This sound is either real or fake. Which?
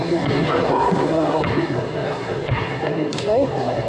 fake